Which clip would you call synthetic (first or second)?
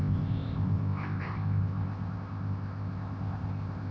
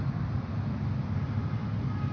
first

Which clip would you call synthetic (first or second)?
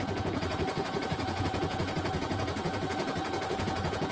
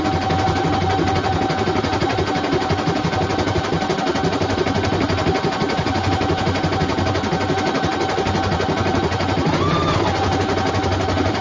first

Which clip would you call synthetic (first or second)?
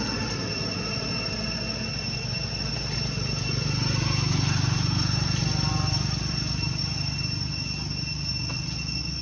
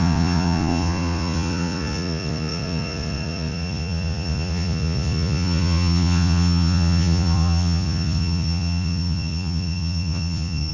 second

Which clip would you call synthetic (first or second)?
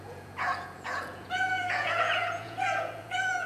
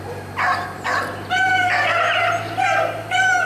first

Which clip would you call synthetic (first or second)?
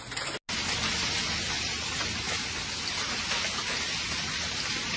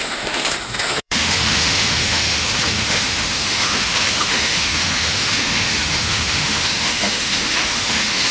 second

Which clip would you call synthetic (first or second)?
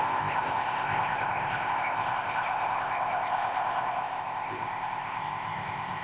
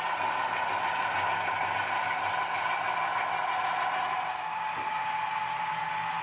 first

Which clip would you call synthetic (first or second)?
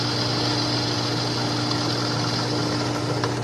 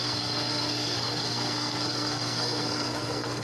second